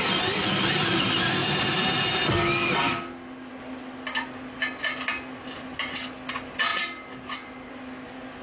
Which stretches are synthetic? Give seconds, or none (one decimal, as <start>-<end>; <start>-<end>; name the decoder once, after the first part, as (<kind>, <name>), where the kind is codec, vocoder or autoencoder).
none